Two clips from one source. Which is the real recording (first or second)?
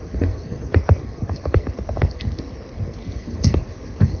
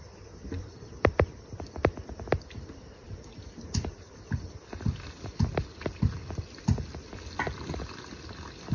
second